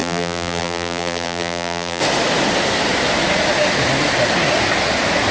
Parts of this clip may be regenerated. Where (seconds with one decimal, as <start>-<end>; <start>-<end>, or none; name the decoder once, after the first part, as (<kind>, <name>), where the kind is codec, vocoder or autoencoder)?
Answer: 0.0-2.0 (vocoder, BigVGAN v2)